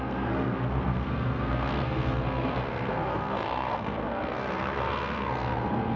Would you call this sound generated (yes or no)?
yes